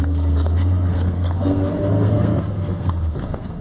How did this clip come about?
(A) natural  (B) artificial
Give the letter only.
B